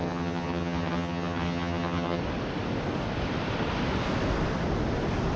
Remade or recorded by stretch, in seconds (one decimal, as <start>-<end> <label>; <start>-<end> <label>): 0.0-2.2 remade; 2.2-5.4 recorded